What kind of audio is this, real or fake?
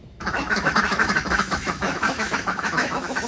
fake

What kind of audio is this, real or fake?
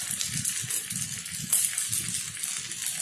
real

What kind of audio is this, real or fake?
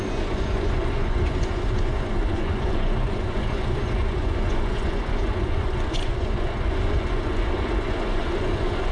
fake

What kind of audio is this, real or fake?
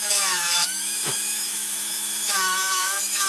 fake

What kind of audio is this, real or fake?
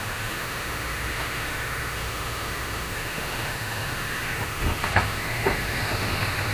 fake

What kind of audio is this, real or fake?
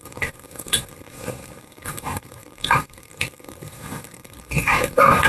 fake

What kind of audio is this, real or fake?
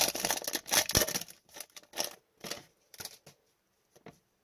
real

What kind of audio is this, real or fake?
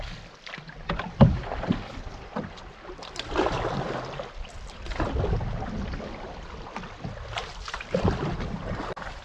real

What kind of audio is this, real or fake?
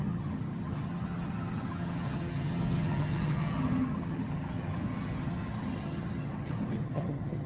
fake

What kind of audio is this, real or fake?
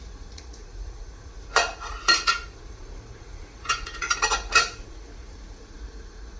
fake